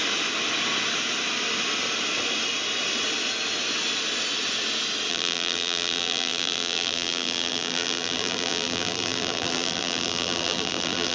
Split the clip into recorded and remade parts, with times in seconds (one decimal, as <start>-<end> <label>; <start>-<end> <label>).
0.0-5.1 recorded; 5.1-11.1 remade